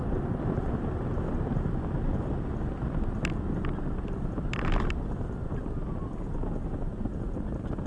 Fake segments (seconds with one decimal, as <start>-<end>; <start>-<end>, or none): none